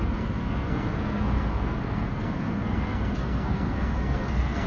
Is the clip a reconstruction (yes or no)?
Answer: yes